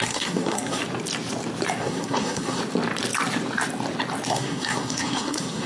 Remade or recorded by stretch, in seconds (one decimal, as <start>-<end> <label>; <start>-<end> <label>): 0.0-0.8 remade; 0.8-1.8 recorded; 1.8-2.6 remade; 2.6-4.3 recorded; 4.3-5.7 remade